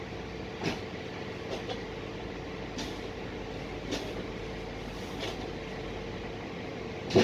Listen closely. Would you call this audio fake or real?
real